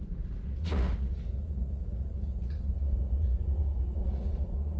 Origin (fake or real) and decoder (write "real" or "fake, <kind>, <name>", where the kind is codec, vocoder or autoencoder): fake, vocoder, Vocos